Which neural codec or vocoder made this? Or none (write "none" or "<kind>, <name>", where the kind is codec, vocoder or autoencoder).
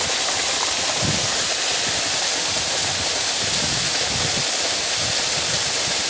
none